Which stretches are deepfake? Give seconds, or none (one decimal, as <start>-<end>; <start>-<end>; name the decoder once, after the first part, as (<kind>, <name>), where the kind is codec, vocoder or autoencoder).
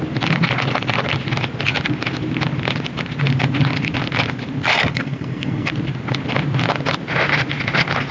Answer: 4.7-5.7 (codec, SNAC)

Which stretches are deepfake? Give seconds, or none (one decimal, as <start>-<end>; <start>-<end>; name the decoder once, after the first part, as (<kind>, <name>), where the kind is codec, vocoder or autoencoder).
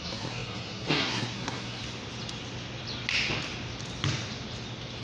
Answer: 0.0-1.8 (codec, SNAC)